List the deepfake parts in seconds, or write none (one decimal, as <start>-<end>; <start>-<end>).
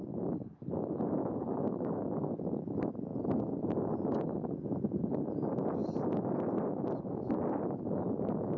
1.2-2.3